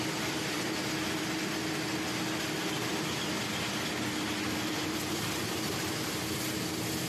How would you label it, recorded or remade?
recorded